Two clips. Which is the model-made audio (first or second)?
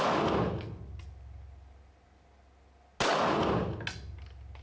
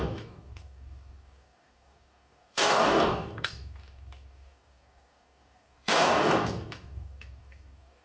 second